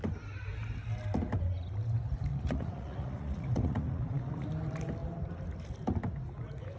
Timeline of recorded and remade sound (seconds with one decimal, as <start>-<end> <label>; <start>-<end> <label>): 0.0-2.3 recorded; 2.3-4.5 remade; 4.5-6.8 recorded